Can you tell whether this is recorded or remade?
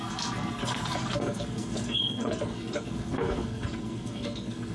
remade